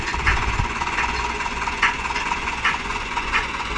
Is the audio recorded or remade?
remade